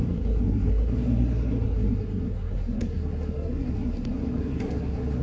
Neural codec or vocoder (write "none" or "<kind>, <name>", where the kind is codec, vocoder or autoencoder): codec, SNAC